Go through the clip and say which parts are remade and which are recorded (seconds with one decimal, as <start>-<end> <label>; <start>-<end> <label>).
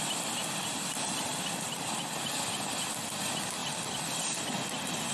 0.0-0.4 recorded; 0.4-2.2 remade; 2.2-3.6 recorded; 3.6-4.5 remade; 4.5-5.1 recorded